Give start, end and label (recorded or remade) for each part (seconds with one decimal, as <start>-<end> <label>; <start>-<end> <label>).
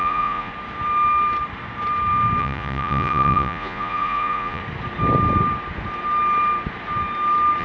0.0-0.5 remade; 0.5-2.4 recorded; 2.4-4.6 remade; 4.6-7.6 recorded